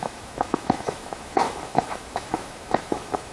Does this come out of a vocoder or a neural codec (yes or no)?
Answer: yes